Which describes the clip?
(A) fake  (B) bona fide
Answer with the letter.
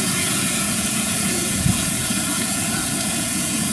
A